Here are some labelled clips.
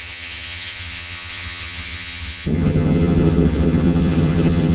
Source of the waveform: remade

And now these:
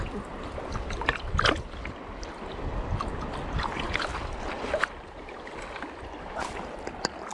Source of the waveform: recorded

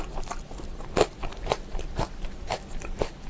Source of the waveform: recorded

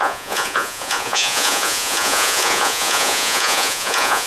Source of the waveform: remade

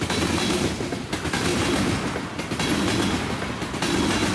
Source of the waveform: recorded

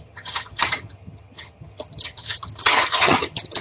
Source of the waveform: remade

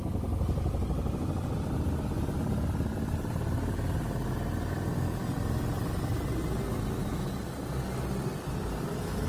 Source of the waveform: recorded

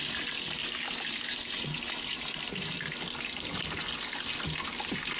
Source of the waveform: recorded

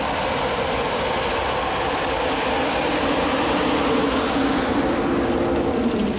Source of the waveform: recorded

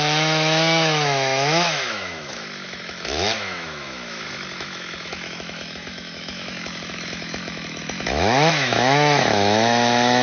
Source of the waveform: remade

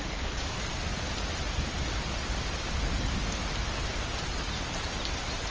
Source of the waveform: recorded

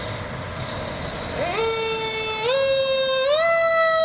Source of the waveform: recorded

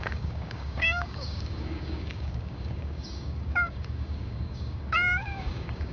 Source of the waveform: remade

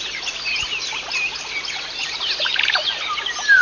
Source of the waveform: recorded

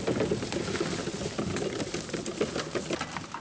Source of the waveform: recorded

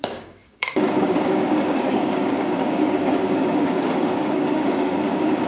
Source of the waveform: remade